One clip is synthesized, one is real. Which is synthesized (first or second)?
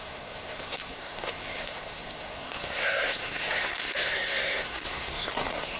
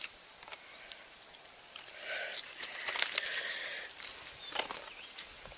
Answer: first